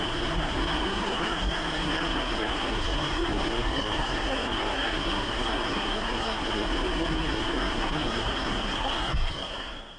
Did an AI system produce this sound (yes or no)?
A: yes